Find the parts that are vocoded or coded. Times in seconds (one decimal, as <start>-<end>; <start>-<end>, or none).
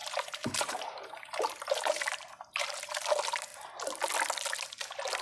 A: 0.0-2.9